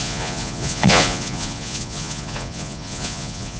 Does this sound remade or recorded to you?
remade